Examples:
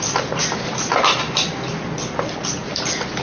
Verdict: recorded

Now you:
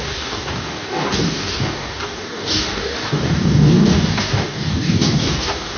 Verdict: remade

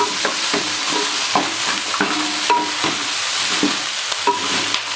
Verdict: recorded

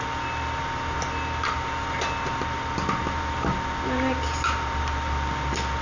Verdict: recorded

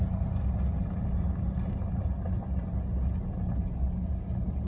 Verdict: recorded